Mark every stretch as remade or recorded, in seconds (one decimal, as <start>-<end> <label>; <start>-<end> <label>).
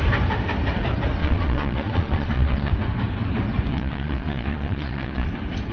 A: 0.0-1.2 recorded; 1.2-2.7 remade; 2.7-3.7 recorded; 3.7-5.3 remade; 5.3-5.7 recorded